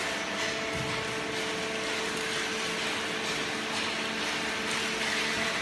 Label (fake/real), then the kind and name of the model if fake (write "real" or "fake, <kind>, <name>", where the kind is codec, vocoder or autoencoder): real